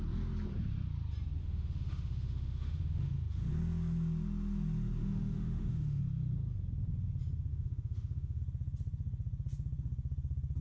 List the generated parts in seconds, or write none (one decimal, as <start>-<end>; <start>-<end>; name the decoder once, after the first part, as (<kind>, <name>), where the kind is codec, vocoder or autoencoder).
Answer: 1.4-3.5 (autoencoder, DAC-VAE); 5.0-6.0; 7.5-8.4